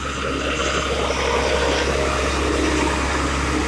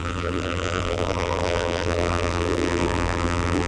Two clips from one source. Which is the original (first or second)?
first